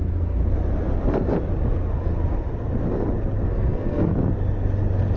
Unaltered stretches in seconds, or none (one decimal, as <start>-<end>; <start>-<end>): 0.4-3.5; 4.1-5.2